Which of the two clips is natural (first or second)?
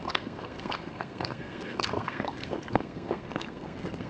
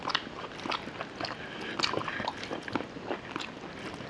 second